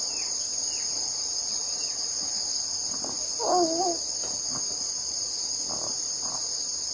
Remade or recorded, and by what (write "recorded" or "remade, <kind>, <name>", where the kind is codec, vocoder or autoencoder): recorded